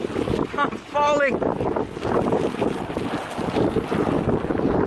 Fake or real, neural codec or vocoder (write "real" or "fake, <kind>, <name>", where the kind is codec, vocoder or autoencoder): real